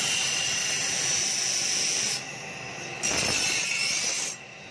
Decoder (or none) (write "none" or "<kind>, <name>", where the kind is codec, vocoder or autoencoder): none